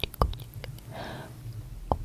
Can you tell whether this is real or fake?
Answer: real